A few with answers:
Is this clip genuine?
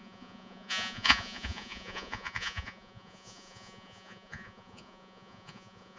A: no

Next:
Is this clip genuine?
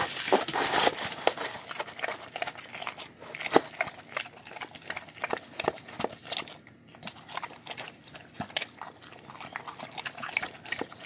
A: yes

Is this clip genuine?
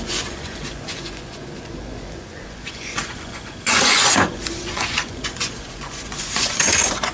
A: no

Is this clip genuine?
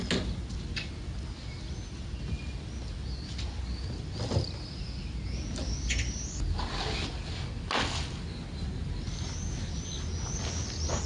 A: yes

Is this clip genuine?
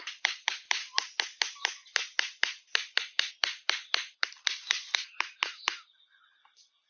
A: yes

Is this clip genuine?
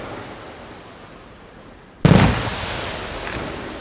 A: yes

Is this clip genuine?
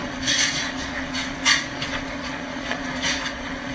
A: no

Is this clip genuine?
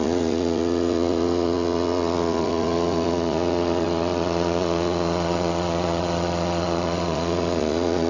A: no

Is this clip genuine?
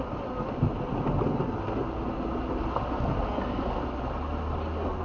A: yes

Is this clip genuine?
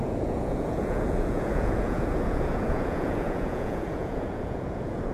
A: no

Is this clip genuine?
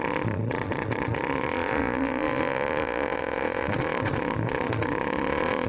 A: no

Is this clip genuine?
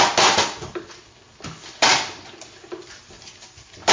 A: yes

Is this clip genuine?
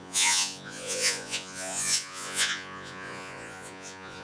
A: no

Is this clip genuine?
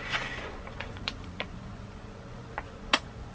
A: no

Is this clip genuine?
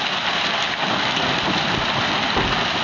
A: yes